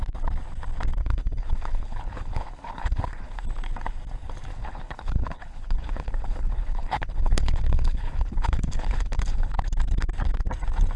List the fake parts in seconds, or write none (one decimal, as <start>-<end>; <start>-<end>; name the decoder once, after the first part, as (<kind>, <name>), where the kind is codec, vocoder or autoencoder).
1.0-3.4 (codec, HILCodec); 4.5-9.5